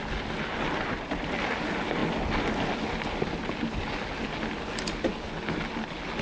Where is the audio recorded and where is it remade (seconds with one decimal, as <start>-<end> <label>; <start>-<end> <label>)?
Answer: 0.0-6.2 recorded